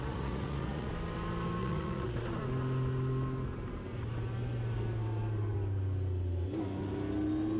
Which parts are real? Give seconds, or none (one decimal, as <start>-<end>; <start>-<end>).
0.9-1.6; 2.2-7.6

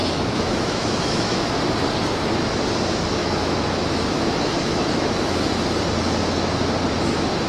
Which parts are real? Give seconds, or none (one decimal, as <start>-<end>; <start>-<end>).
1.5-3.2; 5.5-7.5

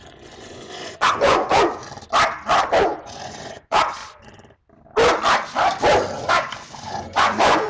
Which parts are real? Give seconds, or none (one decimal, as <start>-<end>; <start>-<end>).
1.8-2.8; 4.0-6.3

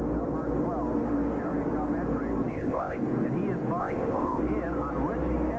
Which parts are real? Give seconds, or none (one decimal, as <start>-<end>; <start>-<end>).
0.0-2.5; 3.0-3.8; 4.4-5.6

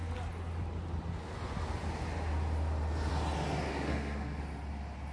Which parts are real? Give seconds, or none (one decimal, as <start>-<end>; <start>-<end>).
0.0-3.7; 4.4-5.1

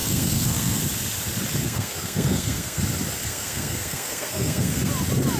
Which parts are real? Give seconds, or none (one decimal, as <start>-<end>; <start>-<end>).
0.8-1.6; 2.8-3.2; 4.9-5.4